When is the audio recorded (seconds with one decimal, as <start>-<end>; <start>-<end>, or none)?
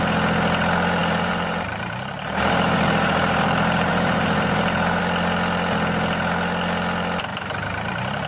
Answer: 0.0-1.0; 5.0-7.3